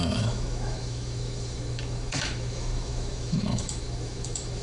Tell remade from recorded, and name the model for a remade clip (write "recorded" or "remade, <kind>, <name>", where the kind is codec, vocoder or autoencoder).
remade, autoencoder, DAC-VAE